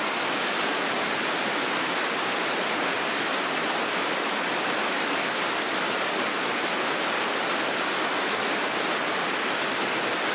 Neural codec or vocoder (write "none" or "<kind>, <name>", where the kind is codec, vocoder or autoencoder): none